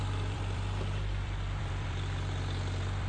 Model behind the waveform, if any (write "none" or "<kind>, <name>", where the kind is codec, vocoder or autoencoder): vocoder, BigVGAN v2